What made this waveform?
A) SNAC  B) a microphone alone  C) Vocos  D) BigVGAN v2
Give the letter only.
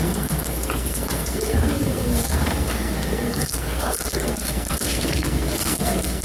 A